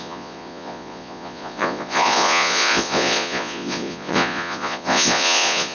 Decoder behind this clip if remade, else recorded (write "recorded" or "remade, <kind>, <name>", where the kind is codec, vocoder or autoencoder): remade, vocoder, Vocos